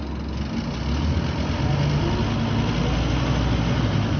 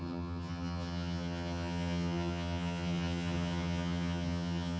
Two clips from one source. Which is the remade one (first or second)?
second